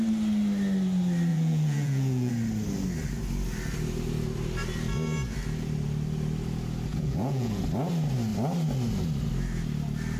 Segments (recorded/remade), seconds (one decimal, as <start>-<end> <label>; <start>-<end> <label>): 0.0-1.3 recorded; 1.3-2.3 remade; 2.3-6.9 recorded; 6.9-7.6 remade; 7.6-10.2 recorded